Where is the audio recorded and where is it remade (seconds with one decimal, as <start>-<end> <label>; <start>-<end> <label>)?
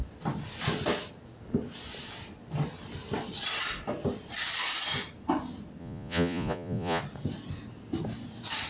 0.0-5.8 recorded; 5.8-7.0 remade; 7.0-8.7 recorded